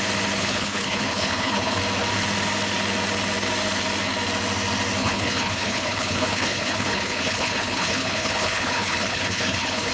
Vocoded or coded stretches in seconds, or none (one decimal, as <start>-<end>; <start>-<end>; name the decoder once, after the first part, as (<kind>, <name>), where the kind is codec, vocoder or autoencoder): 0.4-1.8 (codec, HILCodec); 5.0-9.9